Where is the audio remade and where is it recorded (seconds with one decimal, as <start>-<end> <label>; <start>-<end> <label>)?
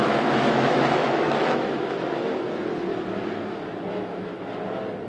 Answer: 0.0-2.3 remade; 2.3-3.9 recorded; 3.9-4.3 remade; 4.3-5.1 recorded